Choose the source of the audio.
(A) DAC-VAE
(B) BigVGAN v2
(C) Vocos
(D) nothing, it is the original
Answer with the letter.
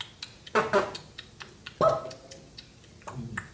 D